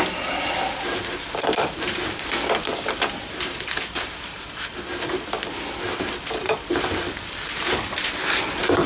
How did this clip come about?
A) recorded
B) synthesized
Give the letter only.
A